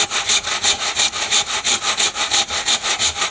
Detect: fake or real real